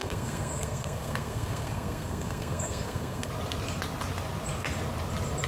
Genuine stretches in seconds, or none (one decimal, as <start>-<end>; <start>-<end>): 3.3-5.5